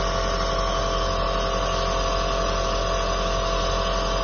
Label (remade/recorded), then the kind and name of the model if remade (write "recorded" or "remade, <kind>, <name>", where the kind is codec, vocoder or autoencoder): recorded